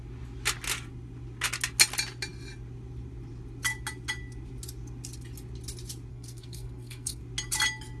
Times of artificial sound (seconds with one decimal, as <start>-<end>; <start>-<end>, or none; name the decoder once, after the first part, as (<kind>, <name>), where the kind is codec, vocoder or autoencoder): 6.1-7.2 (codec, SNAC)